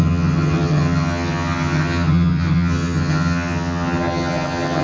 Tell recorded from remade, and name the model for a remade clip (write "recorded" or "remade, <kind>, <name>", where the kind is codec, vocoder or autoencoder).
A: remade, vocoder, HiFi-GAN